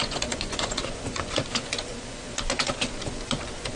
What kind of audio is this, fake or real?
fake